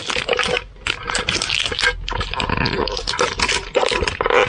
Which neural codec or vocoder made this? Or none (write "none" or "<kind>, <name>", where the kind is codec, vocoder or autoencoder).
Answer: none